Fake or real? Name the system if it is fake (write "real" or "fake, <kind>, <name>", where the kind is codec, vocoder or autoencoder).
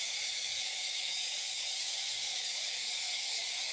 fake, codec, DAC